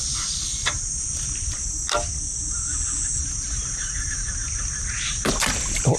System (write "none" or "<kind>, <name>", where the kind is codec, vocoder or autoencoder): none